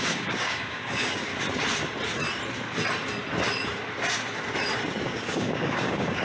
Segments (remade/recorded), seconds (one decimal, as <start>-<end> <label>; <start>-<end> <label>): 0.0-1.3 remade; 1.3-5.0 recorded; 5.0-6.2 remade